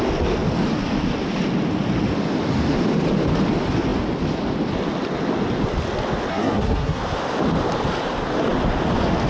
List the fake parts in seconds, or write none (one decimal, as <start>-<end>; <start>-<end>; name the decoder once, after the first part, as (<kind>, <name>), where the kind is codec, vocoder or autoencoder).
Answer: 6.3-7.0 (codec, SNAC)